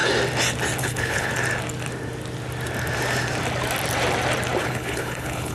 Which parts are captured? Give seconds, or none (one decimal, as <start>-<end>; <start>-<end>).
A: 0.0-0.8; 1.3-4.6